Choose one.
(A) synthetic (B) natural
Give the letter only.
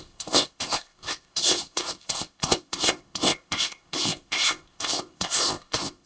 A